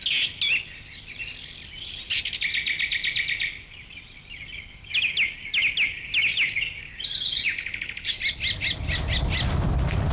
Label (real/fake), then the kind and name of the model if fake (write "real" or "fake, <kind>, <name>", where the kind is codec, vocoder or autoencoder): real